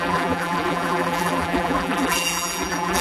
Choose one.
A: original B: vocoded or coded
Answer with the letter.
B